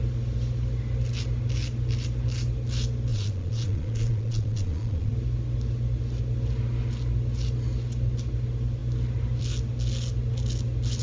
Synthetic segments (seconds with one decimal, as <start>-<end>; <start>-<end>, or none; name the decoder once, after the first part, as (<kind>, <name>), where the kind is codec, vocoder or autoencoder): 3.1-5.1 (vocoder, Vocos)